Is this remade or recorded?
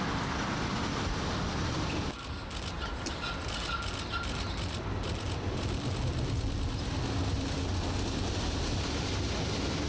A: recorded